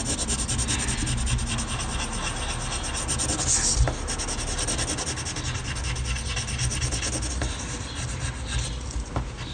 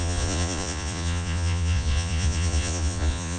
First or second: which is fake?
second